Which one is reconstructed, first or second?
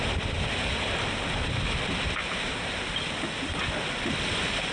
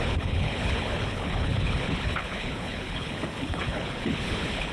second